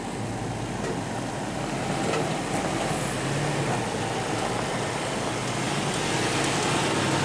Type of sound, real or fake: real